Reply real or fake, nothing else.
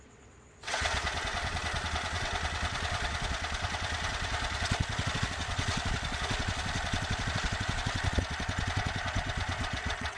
fake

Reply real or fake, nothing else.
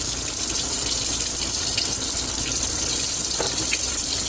fake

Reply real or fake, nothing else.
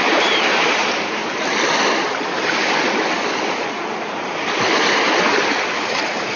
fake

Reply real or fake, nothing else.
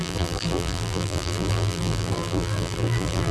fake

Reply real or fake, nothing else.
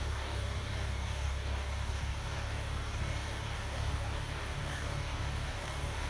fake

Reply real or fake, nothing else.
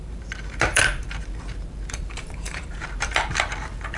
fake